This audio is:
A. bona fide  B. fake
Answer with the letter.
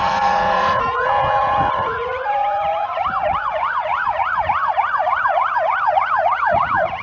B